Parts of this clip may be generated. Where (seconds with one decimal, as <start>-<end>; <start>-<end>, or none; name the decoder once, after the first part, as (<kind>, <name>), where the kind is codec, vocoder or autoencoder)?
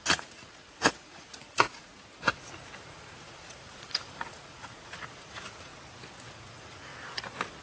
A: 0.0-1.9 (vocoder, Vocos); 2.8-5.7; 6.3-6.9